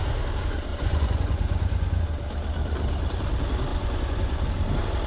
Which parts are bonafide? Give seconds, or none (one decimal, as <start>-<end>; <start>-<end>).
0.0-0.7; 2.0-3.7; 4.4-5.1